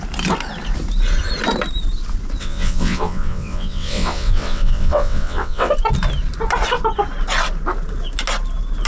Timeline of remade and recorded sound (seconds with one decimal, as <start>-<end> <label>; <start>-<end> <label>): 0.0-2.4 recorded; 2.4-5.7 remade; 5.7-8.9 recorded